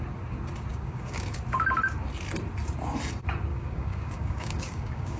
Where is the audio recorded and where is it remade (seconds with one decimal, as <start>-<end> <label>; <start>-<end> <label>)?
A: 0.0-0.7 recorded; 0.7-1.3 remade; 1.3-3.5 recorded; 3.5-5.2 remade